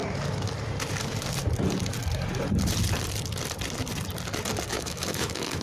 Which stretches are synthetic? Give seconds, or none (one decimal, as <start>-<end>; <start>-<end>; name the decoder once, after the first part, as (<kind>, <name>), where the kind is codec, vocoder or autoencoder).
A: 4.7-5.6 (autoencoder, DAC-VAE)